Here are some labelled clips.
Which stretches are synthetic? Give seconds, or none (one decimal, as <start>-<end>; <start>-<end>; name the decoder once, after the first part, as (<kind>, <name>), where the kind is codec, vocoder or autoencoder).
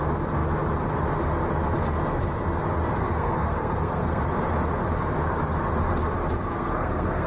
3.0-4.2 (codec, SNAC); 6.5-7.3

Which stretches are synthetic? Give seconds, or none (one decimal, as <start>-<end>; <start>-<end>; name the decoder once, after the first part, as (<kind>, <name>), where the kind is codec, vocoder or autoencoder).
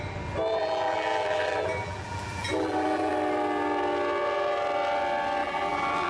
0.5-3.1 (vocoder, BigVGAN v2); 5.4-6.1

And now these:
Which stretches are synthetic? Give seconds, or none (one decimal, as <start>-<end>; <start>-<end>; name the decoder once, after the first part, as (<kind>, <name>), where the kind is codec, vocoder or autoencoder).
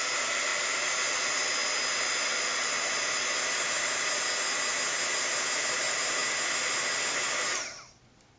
none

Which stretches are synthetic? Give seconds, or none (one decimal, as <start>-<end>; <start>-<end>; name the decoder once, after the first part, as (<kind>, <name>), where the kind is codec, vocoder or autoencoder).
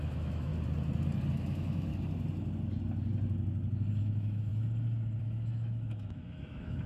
0.0-0.5 (autoencoder, DAC-VAE); 1.3-1.9; 4.0-4.5; 5.2-6.9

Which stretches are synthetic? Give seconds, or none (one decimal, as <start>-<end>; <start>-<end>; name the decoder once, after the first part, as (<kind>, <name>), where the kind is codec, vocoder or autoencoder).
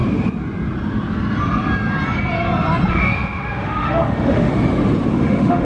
2.9-4.5 (autoencoder, DAC-VAE); 5.1-5.6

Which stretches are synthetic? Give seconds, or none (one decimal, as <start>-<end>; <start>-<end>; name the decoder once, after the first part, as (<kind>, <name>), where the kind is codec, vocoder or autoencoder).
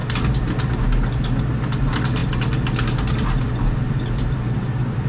1.8-2.2 (vocoder, BigVGAN v2); 3.0-5.1